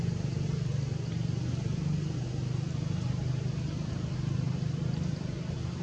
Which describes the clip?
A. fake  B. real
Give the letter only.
B